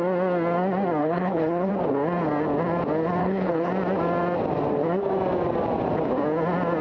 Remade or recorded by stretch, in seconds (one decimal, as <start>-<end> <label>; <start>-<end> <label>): 0.0-1.0 recorded; 1.0-1.7 remade; 1.7-3.2 recorded; 3.2-3.7 remade; 3.7-6.8 recorded